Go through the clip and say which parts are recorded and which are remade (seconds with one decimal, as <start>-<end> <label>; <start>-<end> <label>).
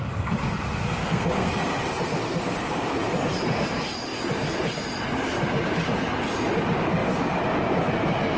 0.0-1.0 recorded; 1.0-1.5 remade; 1.5-8.4 recorded